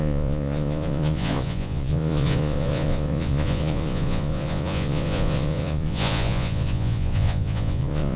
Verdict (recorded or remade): remade